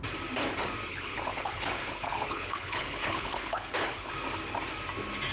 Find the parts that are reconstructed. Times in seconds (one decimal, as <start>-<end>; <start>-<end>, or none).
0.9-4.1